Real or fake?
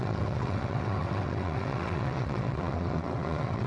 fake